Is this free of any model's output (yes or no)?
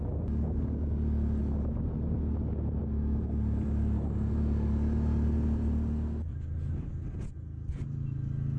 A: yes